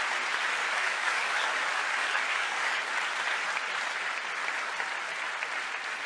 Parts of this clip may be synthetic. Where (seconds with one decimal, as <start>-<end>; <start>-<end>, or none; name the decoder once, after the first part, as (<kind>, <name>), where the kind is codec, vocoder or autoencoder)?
0.6-3.0 (codec, DAC)